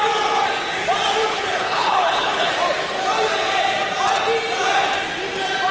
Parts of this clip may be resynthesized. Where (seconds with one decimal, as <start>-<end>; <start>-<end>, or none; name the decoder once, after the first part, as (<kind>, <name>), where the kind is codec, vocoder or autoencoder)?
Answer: 1.3-2.5 (codec, HILCodec)